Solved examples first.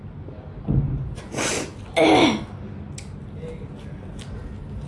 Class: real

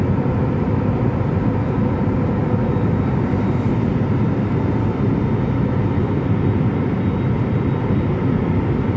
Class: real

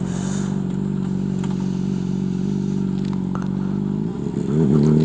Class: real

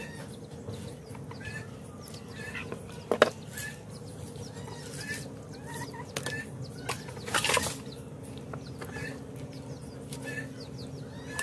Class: real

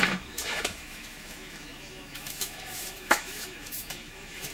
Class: fake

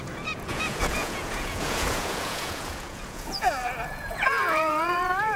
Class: fake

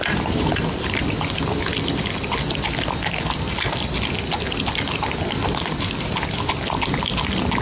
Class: real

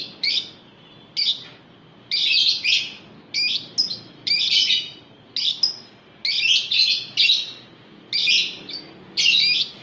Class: real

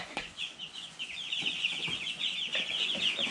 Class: fake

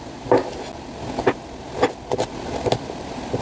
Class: real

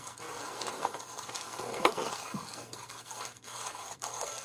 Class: fake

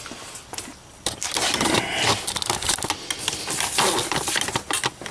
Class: real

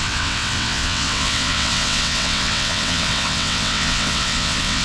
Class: fake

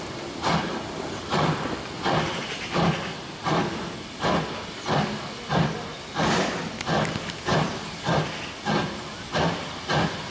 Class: real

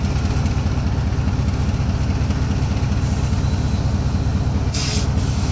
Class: real